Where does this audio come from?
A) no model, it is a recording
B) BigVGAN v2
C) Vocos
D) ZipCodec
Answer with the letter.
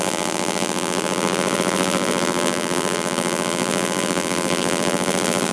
B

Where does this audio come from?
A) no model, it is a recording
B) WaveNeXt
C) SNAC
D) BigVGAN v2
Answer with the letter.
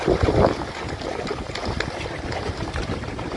D